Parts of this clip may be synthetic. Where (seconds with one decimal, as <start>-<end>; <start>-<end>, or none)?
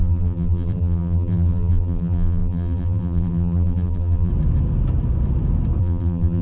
0.0-4.3; 5.8-6.4